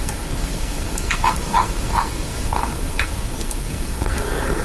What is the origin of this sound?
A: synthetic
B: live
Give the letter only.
A